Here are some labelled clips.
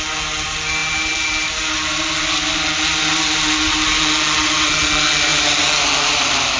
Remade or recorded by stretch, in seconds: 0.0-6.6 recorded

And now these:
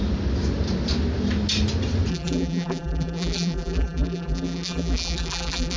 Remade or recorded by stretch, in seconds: 0.0-2.1 recorded; 2.1-5.8 remade